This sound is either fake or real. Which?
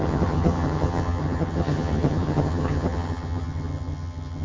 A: fake